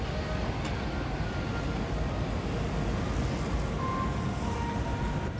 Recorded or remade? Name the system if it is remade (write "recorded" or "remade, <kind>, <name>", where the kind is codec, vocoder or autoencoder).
recorded